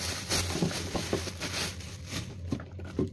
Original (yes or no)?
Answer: yes